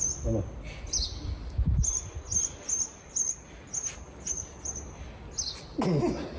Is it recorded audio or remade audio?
recorded